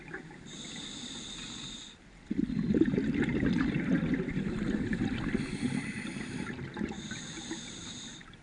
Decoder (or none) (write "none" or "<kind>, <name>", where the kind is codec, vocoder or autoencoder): none